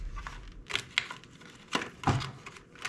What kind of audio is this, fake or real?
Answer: real